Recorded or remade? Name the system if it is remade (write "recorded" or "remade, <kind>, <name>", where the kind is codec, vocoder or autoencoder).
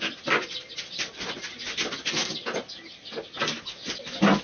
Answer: recorded